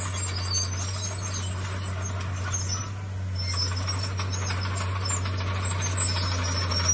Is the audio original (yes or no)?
yes